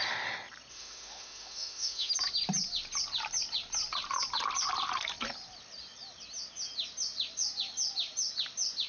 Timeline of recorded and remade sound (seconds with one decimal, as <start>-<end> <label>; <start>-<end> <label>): 0.0-0.7 recorded; 0.7-2.1 remade; 2.1-8.9 recorded